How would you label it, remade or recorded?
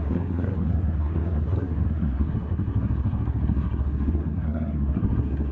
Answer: remade